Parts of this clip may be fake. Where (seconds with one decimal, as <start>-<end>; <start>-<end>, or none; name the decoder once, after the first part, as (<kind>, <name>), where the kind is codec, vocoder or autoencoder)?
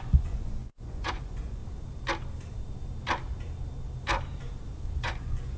0.0-1.6 (vocoder, Vocos); 5.0-5.6